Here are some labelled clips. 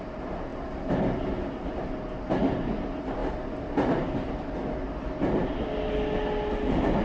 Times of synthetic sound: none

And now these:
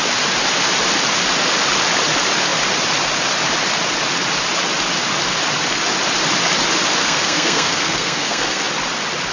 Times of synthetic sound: 7.0-8.6

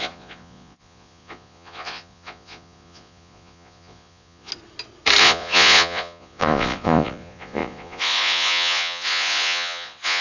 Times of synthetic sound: 0.0-4.5; 5.2-10.2